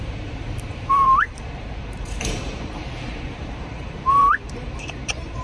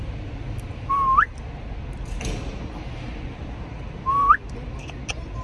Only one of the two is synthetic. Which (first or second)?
first